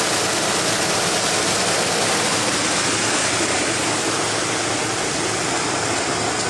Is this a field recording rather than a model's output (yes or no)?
yes